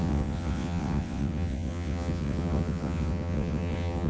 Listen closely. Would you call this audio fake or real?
fake